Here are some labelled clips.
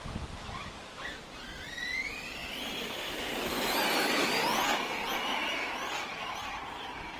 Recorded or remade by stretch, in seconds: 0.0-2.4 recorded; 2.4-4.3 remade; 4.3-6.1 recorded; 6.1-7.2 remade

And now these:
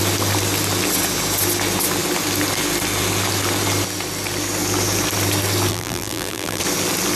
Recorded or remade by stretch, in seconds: 0.0-5.7 recorded; 5.7-6.6 remade; 6.6-7.2 recorded

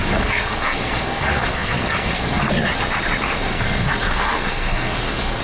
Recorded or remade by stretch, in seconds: 0.0-2.5 remade; 2.5-3.5 recorded; 3.5-5.4 remade

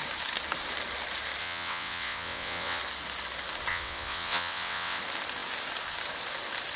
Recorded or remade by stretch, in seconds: 0.0-1.4 recorded; 1.4-2.8 remade; 2.8-3.7 recorded; 3.7-5.0 remade; 5.0-6.8 recorded